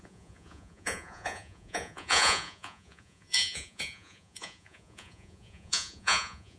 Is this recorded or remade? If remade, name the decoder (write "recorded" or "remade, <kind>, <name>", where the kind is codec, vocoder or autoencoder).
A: remade, vocoder, Vocos